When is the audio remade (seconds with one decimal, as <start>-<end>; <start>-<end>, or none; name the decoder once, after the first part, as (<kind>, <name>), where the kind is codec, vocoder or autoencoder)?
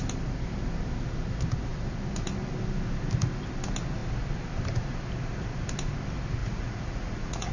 6.4-7.5 (vocoder, Vocos)